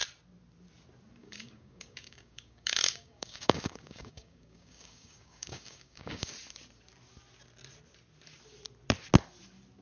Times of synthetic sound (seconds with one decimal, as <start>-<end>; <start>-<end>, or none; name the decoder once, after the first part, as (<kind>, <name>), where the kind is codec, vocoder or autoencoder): 1.2-6.3 (codec, DAC)